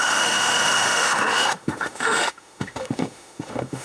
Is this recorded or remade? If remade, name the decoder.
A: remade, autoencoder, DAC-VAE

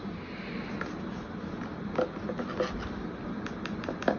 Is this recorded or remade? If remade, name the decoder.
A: recorded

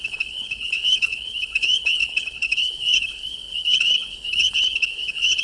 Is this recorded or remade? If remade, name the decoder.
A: remade, codec, HILCodec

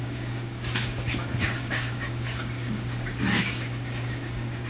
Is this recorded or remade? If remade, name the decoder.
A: remade, codec, DAC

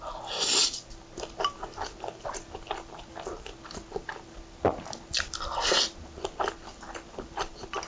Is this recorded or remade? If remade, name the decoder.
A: recorded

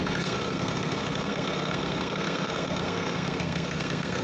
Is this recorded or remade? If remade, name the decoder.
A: remade, codec, SNAC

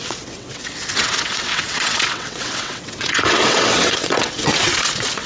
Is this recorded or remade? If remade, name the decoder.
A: remade, vocoder, WaveNeXt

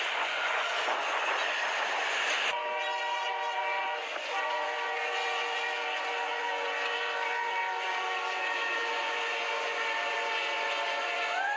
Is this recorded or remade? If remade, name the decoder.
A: remade, vocoder, Vocos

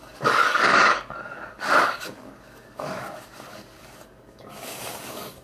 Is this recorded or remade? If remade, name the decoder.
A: remade, codec, DAC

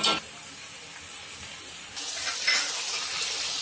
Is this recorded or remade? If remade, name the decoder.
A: recorded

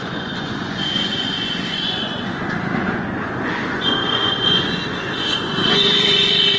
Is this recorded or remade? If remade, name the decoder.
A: remade, vocoder, Vocos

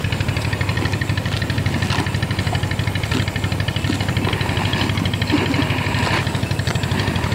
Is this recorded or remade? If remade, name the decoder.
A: recorded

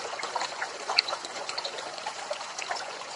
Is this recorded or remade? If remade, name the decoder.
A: remade, vocoder, Vocos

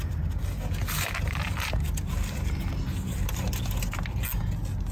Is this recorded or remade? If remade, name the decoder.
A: recorded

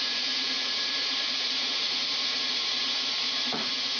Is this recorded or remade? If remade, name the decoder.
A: remade, vocoder, Vocos